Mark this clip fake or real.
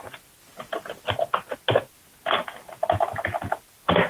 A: real